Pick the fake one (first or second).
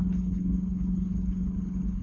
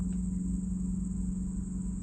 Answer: first